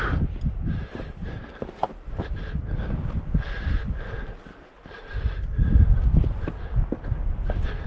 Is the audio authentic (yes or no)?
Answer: yes